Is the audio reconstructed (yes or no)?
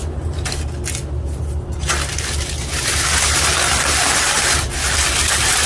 no